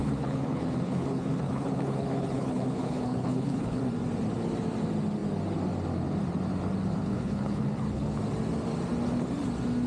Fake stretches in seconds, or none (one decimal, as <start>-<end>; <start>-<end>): 0.0-3.8; 7.0-8.2